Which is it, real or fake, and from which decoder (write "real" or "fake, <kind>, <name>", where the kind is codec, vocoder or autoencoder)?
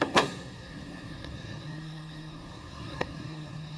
fake, codec, SNAC